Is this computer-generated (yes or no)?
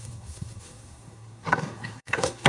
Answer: yes